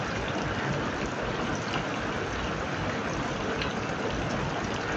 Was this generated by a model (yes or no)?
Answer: no